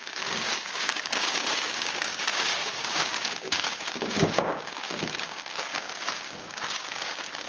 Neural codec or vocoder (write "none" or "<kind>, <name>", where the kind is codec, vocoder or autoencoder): codec, DAC